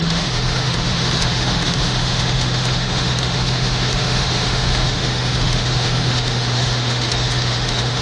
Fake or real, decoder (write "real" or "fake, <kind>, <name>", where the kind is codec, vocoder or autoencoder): fake, autoencoder, DAC-VAE